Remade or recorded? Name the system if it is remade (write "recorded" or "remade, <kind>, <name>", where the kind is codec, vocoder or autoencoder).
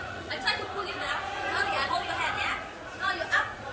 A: remade, vocoder, Vocos